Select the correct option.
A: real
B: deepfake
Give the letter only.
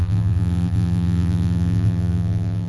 B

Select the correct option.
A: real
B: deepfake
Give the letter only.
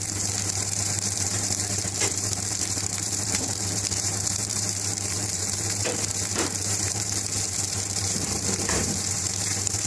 B